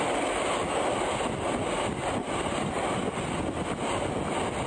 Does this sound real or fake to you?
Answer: real